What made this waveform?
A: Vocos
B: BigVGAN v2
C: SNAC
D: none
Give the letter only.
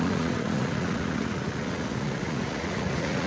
A